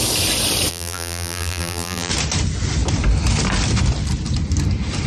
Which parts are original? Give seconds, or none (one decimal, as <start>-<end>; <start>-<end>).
0.0-0.7; 2.1-5.1